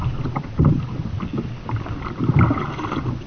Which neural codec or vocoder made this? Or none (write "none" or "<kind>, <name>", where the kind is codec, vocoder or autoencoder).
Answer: none